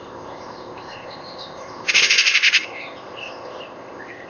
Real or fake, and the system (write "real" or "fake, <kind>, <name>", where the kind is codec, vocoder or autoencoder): fake, codec, ZipCodec